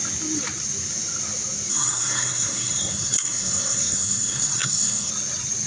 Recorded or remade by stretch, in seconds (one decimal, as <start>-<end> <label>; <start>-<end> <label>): 0.0-1.7 recorded; 1.7-5.1 remade; 5.1-5.7 recorded